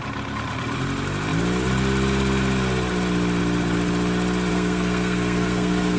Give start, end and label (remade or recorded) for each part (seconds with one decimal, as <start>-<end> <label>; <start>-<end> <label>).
0.0-4.5 recorded; 4.5-6.0 remade

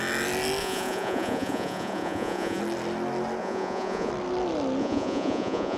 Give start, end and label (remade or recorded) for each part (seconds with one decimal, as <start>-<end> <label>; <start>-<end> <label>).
0.0-0.6 recorded; 0.6-2.6 remade; 2.6-3.4 recorded; 3.4-4.1 remade; 4.1-4.8 recorded; 4.8-5.8 remade

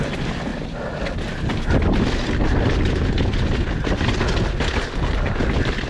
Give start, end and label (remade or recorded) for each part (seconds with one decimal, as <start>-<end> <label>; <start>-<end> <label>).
0.0-5.9 recorded

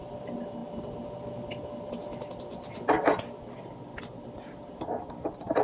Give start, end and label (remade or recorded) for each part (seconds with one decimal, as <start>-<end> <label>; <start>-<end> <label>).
0.0-5.6 recorded